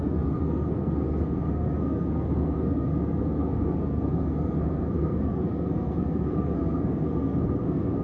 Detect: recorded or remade remade